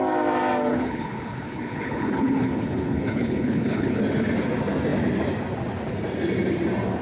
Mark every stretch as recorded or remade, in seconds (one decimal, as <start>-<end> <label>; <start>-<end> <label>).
0.0-0.7 recorded; 0.7-4.0 remade; 4.0-7.0 recorded